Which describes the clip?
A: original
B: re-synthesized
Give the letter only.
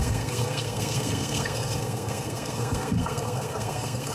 B